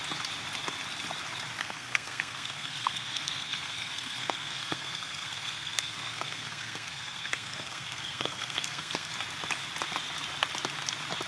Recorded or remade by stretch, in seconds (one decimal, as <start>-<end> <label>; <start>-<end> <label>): 0.0-1.6 recorded; 1.6-9.1 remade; 9.1-11.3 recorded